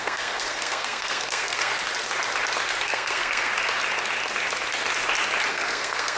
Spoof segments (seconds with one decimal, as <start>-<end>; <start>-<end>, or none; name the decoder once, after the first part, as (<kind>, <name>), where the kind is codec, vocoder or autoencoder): 0.0-1.7 (codec, SNAC); 2.8-3.5; 5.5-6.2